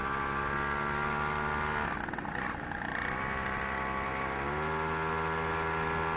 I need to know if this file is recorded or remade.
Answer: recorded